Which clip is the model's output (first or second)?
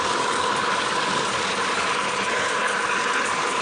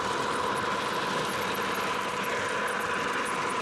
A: first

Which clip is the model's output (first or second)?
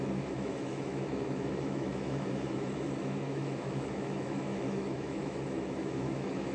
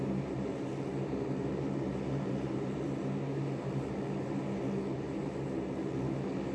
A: first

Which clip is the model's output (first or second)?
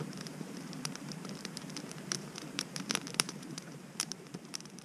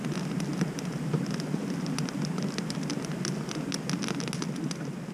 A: first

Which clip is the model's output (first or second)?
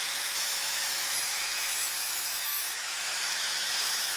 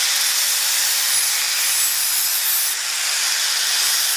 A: first